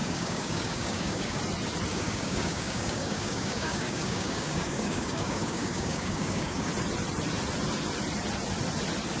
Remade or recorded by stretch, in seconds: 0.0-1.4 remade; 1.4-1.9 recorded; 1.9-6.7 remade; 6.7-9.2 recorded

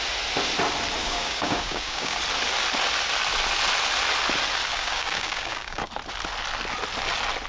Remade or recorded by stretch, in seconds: 0.0-1.0 recorded; 1.0-2.2 remade; 2.2-4.7 recorded; 4.7-5.9 remade; 5.9-7.5 recorded